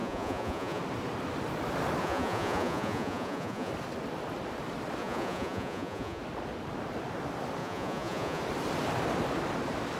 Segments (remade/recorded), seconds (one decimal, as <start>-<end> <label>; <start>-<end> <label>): 0.0-0.8 remade; 0.8-2.0 recorded; 2.0-3.7 remade; 3.7-5.0 recorded; 5.0-6.2 remade; 6.2-7.6 recorded; 7.6-8.4 remade; 8.4-10.0 recorded